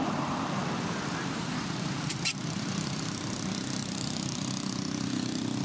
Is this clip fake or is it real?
fake